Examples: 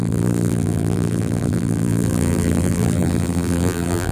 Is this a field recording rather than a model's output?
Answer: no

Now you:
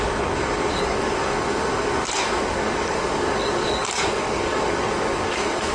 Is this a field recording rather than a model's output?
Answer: no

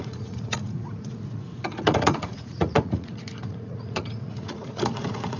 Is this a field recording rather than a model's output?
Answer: no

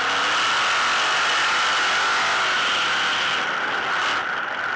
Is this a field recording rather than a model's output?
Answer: yes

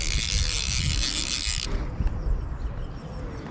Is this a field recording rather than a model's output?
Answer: yes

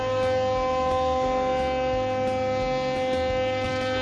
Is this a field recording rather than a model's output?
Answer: yes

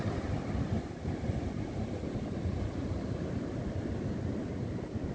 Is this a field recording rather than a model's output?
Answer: yes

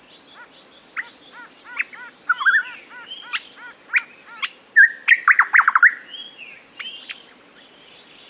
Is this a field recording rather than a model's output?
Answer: yes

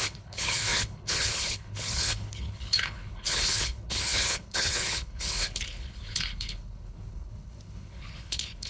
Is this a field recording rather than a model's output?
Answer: no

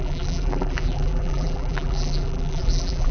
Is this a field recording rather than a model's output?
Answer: no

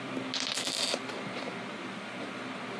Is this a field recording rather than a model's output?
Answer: yes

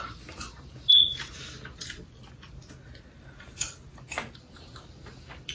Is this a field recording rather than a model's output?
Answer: yes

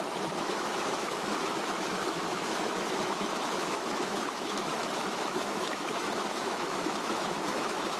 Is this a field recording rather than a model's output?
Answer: no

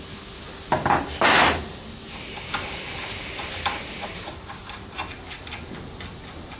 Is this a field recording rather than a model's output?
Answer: yes